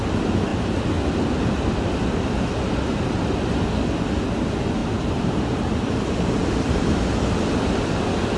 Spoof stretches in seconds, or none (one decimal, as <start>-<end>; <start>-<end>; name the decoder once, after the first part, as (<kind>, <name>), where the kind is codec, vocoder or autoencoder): 4.8-6.4 (vocoder, BigVGAN v2)